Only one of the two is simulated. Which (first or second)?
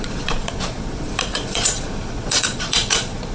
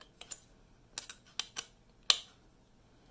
first